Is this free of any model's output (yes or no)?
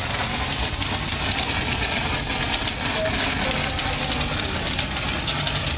yes